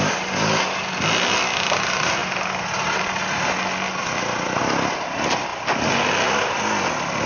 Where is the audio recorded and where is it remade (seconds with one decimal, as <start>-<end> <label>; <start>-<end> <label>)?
0.0-7.3 recorded

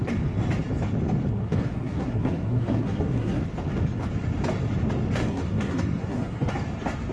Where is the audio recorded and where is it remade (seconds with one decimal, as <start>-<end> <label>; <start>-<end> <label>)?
0.0-1.3 recorded; 1.3-3.4 remade; 3.4-5.2 recorded; 5.2-6.5 remade; 6.5-7.1 recorded

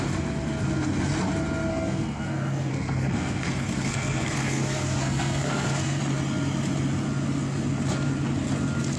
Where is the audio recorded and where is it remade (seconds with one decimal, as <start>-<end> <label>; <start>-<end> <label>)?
0.0-1.7 recorded; 1.7-6.0 remade; 6.0-9.0 recorded

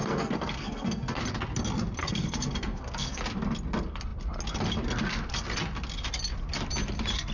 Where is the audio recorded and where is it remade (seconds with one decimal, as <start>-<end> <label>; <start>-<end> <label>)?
0.0-1.2 remade; 1.2-2.0 recorded; 2.0-3.2 remade; 3.2-7.3 recorded